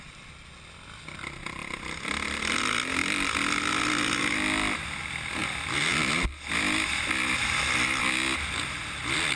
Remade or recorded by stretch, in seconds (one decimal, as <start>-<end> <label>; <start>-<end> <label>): 0.0-9.4 recorded